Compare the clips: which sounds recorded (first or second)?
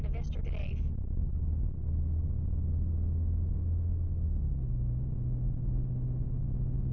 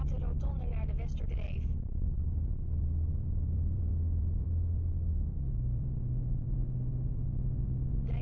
first